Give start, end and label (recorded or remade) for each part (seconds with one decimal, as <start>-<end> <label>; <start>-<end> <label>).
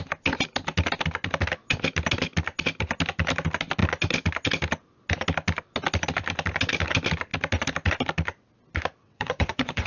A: 0.0-9.0 recorded; 9.0-9.9 remade